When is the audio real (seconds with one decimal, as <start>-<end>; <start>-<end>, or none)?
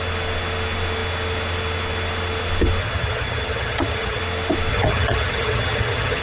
0.0-2.8; 4.2-4.7